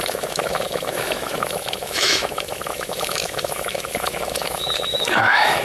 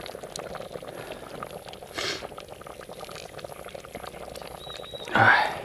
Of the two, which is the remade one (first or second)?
first